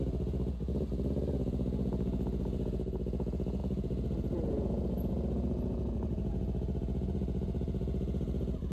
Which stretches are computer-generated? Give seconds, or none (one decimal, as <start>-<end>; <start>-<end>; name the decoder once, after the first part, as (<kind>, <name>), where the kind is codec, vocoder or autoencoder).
0.0-8.7 (vocoder, Vocos)